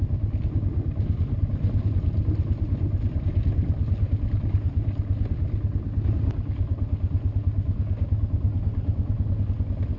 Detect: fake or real real